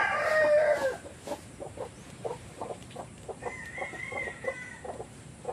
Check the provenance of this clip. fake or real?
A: fake